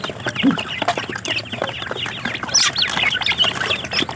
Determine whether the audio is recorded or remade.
recorded